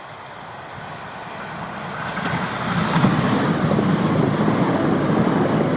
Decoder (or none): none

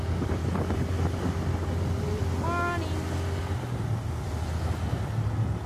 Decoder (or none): none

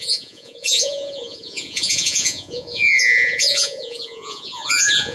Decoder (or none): vocoder, Vocos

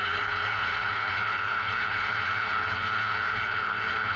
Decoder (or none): codec, HILCodec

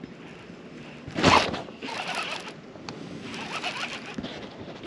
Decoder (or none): none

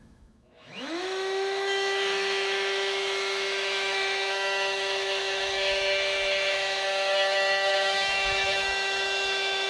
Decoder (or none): autoencoder, DAC-VAE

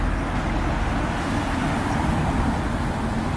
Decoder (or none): none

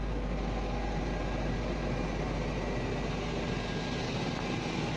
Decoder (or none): none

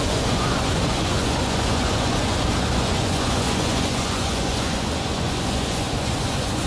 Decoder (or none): vocoder, Vocos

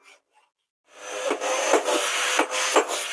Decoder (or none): none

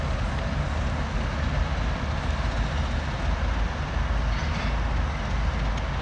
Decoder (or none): none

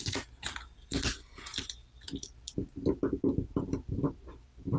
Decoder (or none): none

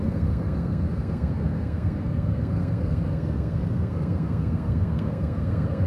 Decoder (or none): codec, SNAC